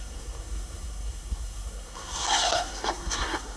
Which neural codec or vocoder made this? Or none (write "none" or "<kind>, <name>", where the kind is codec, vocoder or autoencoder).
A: codec, SNAC